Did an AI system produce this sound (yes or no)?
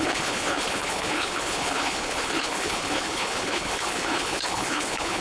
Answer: yes